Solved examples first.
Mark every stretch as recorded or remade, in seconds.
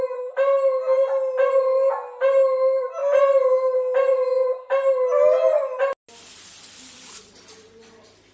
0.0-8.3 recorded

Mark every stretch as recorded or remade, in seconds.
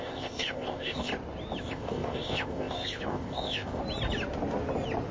0.0-1.1 remade; 1.1-1.6 recorded; 1.6-3.8 remade; 3.8-5.1 recorded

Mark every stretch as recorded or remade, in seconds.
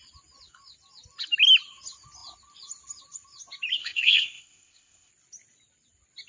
0.0-3.8 recorded; 3.8-5.1 remade; 5.1-6.3 recorded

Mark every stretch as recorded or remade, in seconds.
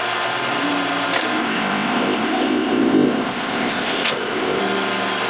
0.0-1.4 recorded; 1.4-4.6 remade; 4.6-5.3 recorded